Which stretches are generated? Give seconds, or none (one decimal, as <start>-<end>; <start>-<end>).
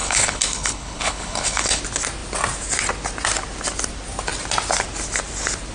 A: 0.0-1.8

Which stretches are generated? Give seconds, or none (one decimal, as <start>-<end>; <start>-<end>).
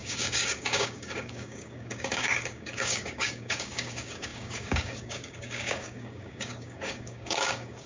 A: 0.0-7.9